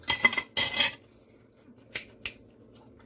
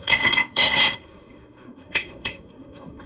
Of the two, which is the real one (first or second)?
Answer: first